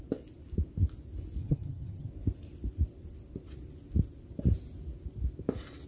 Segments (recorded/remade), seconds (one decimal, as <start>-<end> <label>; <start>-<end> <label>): 0.0-1.4 recorded; 1.4-2.1 remade; 2.1-5.9 recorded